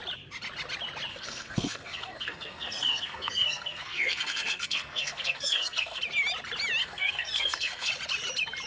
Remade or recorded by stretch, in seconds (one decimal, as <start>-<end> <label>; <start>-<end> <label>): 0.0-1.1 recorded; 1.1-6.0 remade; 6.0-6.8 recorded; 6.8-7.9 remade; 7.9-8.7 recorded